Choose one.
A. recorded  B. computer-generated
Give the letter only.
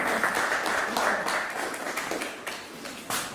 B